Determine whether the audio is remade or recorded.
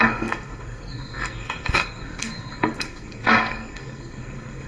remade